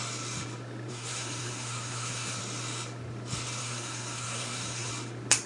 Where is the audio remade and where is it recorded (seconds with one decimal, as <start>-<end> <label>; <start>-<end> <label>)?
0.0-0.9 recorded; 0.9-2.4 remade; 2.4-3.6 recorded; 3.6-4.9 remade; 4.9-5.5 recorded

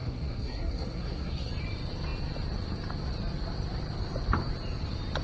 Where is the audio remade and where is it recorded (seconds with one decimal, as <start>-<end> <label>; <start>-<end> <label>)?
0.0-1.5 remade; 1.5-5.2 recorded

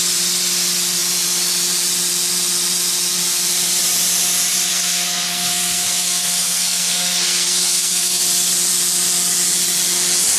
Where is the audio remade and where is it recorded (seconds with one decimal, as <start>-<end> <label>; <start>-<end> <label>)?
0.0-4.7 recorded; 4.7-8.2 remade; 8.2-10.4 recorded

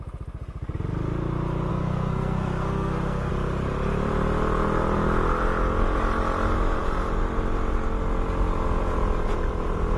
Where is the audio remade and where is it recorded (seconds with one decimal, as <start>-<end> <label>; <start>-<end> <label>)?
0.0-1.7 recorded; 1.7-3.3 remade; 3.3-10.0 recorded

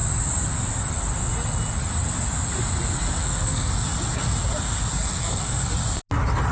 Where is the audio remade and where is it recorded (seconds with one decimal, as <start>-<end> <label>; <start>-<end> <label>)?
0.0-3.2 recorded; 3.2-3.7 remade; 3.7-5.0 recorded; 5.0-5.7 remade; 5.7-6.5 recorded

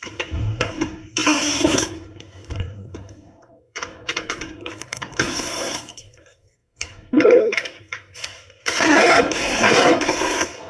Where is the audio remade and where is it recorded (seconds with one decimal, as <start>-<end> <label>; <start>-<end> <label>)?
0.0-10.7 remade